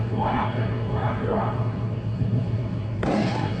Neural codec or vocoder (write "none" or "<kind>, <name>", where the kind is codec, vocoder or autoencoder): codec, SNAC